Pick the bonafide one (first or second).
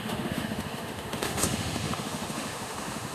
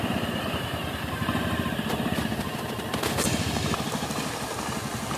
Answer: second